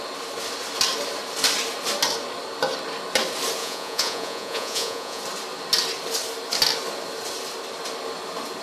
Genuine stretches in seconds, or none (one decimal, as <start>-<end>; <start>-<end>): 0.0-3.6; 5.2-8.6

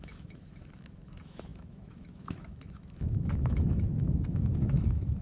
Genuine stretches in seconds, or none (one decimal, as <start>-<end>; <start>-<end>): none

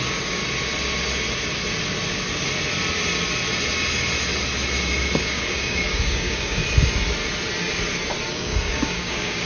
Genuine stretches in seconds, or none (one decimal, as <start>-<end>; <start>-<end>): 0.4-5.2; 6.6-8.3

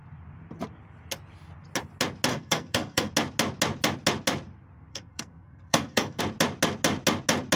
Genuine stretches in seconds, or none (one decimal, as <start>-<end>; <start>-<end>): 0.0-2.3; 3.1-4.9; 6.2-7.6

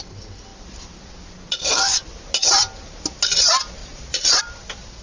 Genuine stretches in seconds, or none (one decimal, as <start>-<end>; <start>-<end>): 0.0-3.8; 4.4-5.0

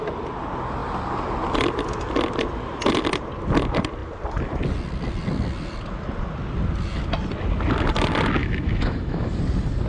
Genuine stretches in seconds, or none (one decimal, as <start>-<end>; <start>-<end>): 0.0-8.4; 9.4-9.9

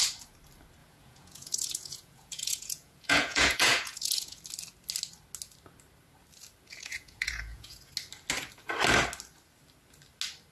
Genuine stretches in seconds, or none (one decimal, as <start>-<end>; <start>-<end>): 0.0-0.8; 4.4-6.7; 7.9-10.5

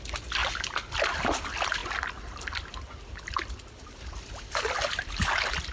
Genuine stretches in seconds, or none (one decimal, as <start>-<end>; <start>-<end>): 0.0-5.7